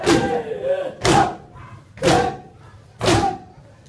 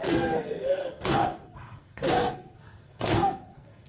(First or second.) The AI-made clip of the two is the second